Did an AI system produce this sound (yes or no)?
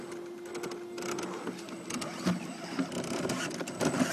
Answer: no